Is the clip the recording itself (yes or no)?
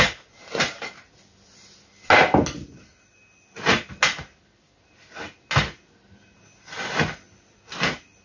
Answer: yes